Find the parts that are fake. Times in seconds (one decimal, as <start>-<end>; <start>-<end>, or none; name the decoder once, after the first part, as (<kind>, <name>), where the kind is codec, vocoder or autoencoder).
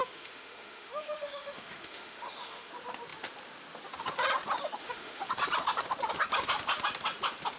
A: 0.0-2.7 (autoencoder, DAC-VAE); 4.8-5.3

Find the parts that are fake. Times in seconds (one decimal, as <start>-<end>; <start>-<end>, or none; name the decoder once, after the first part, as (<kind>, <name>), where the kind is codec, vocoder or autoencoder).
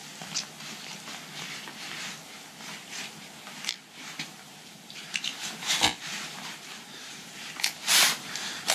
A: 4.5-8.7 (vocoder, BigVGAN v2)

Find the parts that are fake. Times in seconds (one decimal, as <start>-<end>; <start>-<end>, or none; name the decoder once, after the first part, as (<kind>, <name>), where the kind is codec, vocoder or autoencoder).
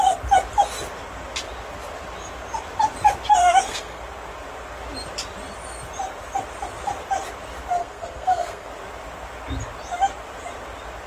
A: 3.4-4.0 (codec, SNAC); 7.8-8.7